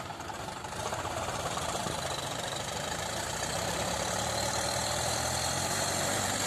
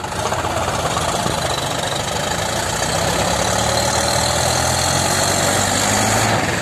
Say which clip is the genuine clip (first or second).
second